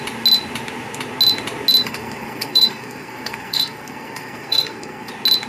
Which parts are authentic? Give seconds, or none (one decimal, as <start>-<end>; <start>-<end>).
0.0-1.8; 5.1-5.5